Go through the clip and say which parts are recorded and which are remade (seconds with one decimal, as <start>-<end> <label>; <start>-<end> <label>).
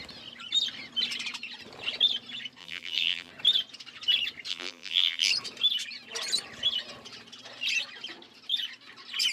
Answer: 0.0-2.6 recorded; 2.6-3.3 remade; 3.3-4.5 recorded; 4.5-5.3 remade; 5.3-9.3 recorded